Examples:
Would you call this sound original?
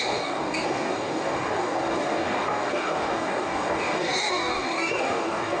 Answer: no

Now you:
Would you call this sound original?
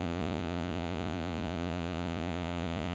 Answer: no